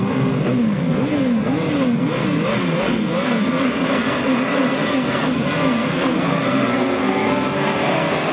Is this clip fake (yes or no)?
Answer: yes